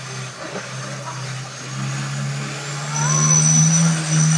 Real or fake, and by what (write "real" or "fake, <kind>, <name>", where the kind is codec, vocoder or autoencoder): real